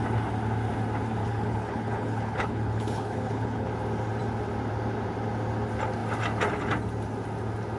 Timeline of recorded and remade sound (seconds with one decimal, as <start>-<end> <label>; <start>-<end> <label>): 0.0-1.2 recorded; 1.2-3.7 remade; 3.7-7.8 recorded